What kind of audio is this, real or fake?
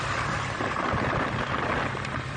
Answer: fake